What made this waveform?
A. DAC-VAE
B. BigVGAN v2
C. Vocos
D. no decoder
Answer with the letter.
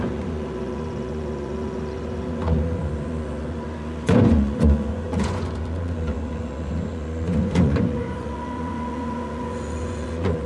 C